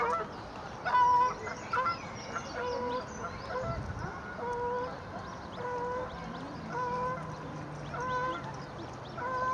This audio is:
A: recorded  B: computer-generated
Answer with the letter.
A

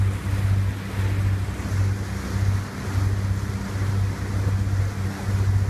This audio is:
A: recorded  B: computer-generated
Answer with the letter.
A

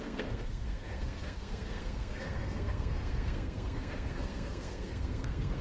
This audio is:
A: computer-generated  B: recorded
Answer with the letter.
A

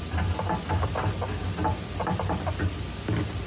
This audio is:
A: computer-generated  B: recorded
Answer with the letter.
B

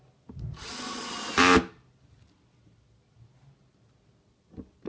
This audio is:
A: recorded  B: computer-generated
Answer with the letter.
A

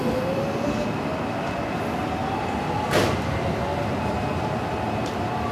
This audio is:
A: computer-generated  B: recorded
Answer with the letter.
B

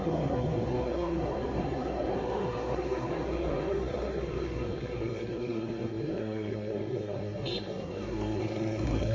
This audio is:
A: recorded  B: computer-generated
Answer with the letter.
B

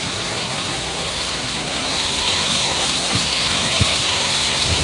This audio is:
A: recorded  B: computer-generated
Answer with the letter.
B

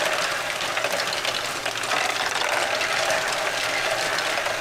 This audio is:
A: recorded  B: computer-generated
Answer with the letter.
A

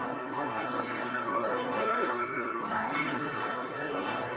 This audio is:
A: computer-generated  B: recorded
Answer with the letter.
A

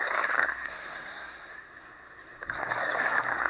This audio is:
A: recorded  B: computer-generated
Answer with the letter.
B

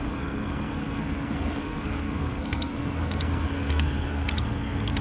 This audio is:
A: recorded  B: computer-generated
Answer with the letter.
B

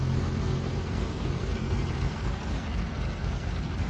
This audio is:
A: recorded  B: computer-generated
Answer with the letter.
B